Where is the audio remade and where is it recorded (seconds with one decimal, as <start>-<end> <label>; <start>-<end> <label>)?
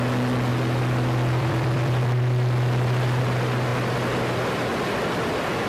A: 0.0-0.5 recorded; 0.5-3.2 remade; 3.2-5.7 recorded